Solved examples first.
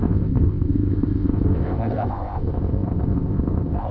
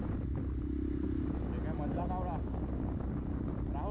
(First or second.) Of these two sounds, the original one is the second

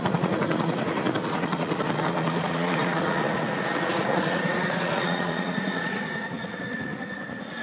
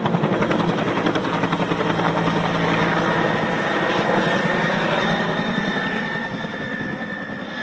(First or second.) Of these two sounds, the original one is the second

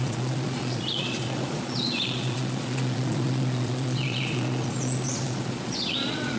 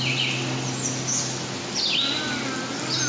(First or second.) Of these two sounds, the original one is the second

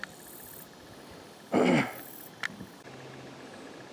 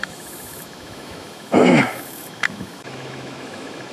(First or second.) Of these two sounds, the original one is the first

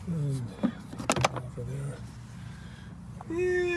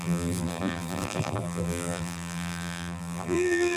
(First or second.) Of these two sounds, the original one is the first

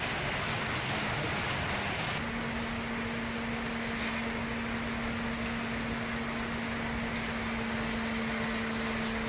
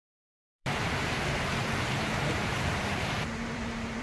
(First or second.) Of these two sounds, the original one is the first